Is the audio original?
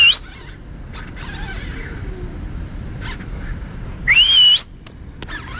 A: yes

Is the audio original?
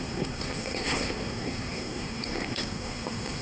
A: no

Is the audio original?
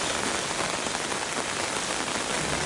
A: yes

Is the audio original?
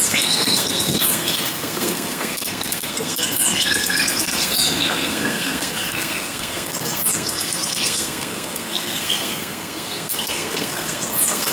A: no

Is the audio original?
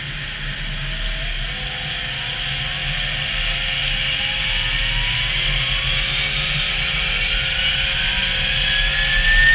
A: yes